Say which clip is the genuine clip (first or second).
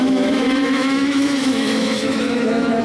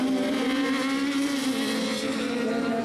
second